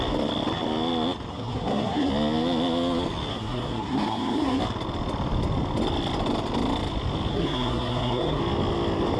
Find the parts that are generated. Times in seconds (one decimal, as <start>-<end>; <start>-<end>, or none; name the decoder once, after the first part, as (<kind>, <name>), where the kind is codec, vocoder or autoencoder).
1.3-2.1 (codec, SNAC); 3.3-4.6; 7.3-8.4